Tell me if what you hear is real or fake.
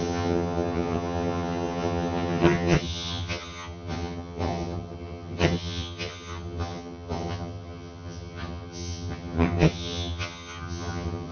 fake